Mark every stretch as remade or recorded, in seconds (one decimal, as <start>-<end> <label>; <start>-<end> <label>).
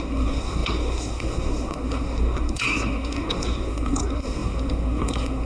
0.0-5.5 remade